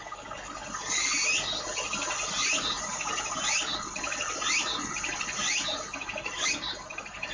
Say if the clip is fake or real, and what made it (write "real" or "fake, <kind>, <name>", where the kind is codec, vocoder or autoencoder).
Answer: real